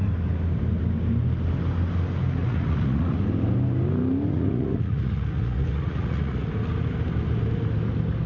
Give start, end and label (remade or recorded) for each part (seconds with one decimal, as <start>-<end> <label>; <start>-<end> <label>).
0.0-2.4 recorded; 2.4-3.2 remade; 3.2-4.3 recorded; 4.3-6.5 remade; 6.5-8.3 recorded